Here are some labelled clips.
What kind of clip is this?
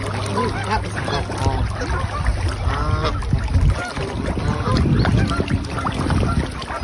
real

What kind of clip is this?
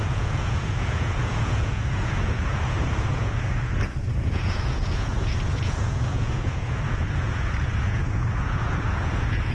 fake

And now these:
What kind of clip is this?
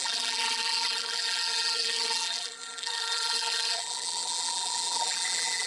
fake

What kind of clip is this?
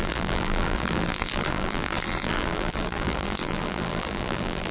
fake